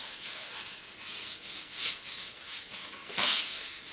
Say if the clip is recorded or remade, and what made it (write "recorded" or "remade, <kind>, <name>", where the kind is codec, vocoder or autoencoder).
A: remade, codec, SNAC